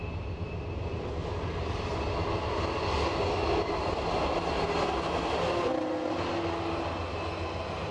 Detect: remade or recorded recorded